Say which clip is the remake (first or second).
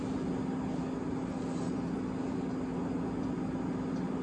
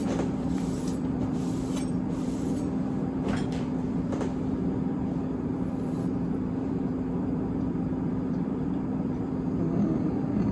second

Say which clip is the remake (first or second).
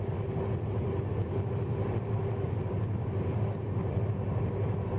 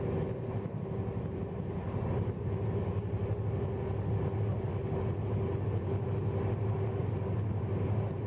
first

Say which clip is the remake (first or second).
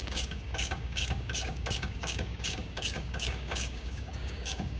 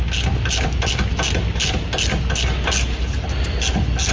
first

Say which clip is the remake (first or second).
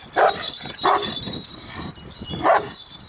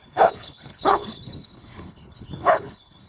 second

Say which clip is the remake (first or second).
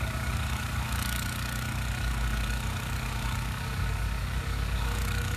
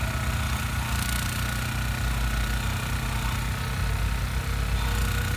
first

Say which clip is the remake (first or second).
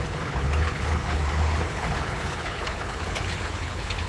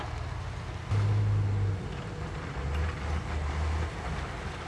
first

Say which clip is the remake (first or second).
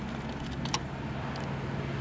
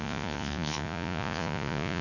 second